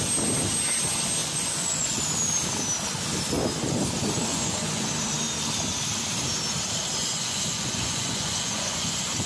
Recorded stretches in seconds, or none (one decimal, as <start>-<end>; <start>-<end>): 0.0-1.2; 2.0-4.3; 4.9-7.0